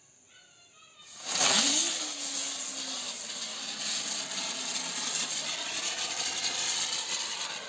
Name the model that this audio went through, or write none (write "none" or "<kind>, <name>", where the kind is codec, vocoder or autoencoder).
none